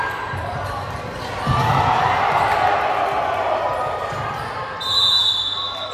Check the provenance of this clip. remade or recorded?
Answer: recorded